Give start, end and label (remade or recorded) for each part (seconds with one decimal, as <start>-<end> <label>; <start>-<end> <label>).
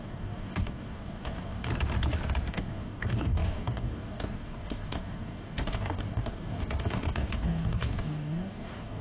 0.0-1.7 remade; 1.7-2.5 recorded; 2.5-9.0 remade